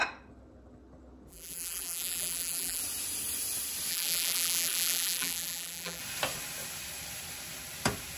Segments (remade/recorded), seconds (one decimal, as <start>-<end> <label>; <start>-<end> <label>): 0.0-1.3 recorded; 1.3-2.8 remade; 2.8-3.9 recorded; 3.9-6.0 remade; 6.0-8.2 recorded